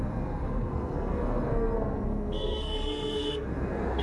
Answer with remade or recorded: remade